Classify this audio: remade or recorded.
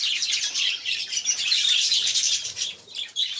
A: remade